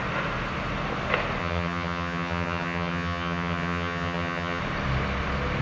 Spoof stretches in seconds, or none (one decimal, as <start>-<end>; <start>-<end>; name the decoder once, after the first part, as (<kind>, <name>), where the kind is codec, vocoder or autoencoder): 1.4-4.6 (vocoder, HiFi-GAN)